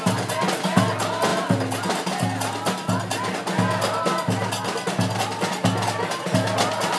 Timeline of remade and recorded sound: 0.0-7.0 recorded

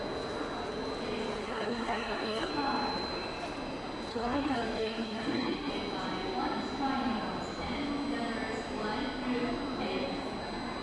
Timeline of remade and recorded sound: 0.0-1.4 recorded; 1.4-2.5 remade; 2.5-4.1 recorded; 4.1-5.7 remade; 5.7-10.8 recorded

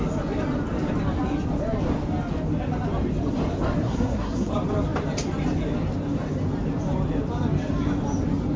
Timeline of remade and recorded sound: 0.0-3.8 recorded; 3.8-4.5 remade; 4.5-8.6 recorded

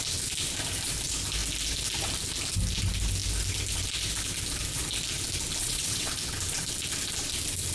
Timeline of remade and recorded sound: 0.0-5.6 recorded; 5.6-6.1 remade; 6.1-7.7 recorded

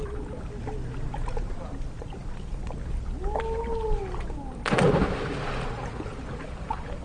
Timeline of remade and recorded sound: 0.0-6.1 recorded; 6.1-7.0 remade

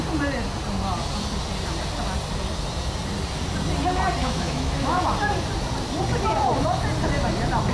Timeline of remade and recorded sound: 0.0-4.2 recorded; 4.2-5.0 remade; 5.0-7.7 recorded

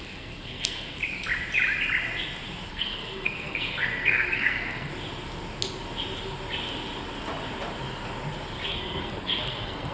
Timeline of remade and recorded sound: 0.0-1.0 remade; 1.0-2.7 recorded; 2.7-4.9 remade; 4.9-8.7 recorded; 8.7-9.9 remade

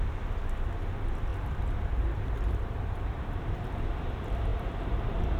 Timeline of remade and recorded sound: 0.0-1.3 recorded; 1.3-3.7 remade; 3.7-4.5 recorded; 4.5-5.4 remade